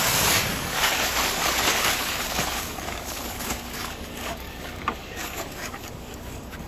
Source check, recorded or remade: remade